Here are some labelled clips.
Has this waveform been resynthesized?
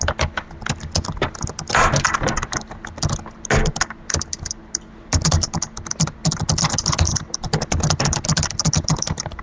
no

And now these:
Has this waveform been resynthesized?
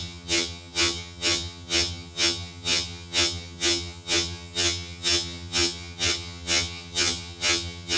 yes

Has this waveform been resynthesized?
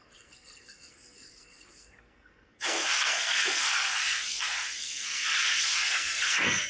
yes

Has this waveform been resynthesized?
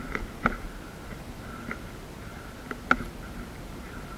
no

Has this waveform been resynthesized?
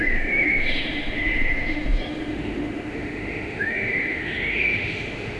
yes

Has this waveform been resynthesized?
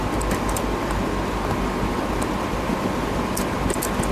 no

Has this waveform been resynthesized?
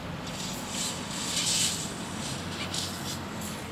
no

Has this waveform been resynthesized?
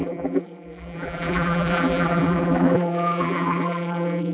yes